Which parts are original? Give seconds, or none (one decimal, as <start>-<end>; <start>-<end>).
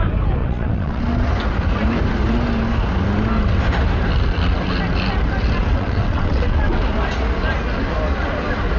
0.0-0.4; 1.0-5.7; 6.8-8.8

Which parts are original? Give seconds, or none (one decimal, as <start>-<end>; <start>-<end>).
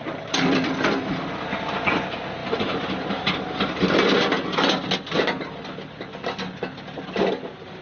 0.0-7.8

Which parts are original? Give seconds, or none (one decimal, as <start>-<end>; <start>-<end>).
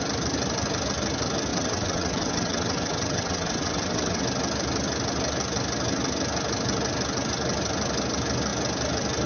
0.0-1.5; 4.2-9.3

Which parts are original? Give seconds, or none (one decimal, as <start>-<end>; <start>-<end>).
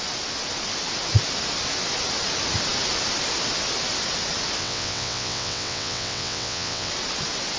0.0-4.6; 6.9-7.6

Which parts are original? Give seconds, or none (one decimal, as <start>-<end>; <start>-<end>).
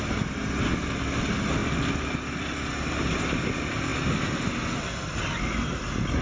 0.0-6.2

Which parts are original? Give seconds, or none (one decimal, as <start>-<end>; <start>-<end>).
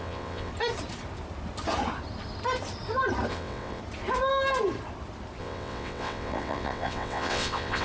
0.5-3.3; 3.8-5.4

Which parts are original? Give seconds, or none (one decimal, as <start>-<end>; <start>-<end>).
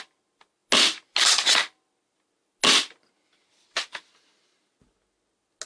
0.0-5.7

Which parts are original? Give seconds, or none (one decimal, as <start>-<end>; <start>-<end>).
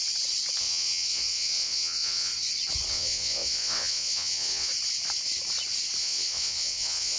0.0-0.6; 2.3-2.9; 4.7-6.0